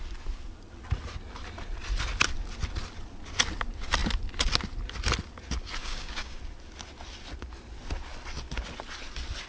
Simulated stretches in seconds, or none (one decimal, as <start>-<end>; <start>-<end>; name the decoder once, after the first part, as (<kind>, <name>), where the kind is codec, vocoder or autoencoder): 5.8-6.4 (codec, DAC)